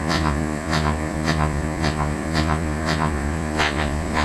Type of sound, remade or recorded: remade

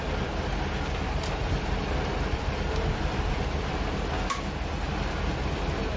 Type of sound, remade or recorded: recorded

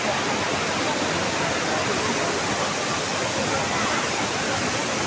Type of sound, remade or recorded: recorded